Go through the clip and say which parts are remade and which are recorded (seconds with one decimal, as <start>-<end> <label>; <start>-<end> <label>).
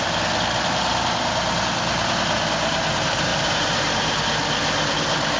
0.0-3.3 recorded; 3.3-4.2 remade; 4.2-5.4 recorded